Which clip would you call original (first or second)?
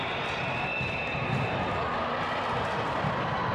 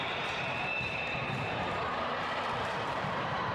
first